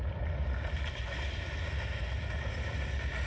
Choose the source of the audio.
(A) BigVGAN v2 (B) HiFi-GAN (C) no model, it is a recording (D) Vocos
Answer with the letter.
C